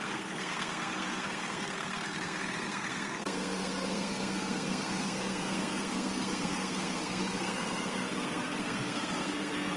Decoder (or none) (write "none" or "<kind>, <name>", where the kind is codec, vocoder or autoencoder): codec, SNAC